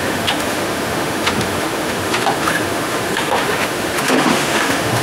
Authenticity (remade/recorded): remade